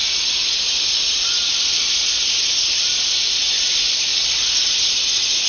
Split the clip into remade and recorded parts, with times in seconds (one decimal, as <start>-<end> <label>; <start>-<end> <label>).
0.0-3.0 remade; 3.0-4.1 recorded; 4.1-4.8 remade; 4.8-5.5 recorded